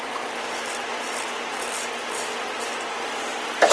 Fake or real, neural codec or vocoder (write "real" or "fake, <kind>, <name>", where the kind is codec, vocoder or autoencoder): real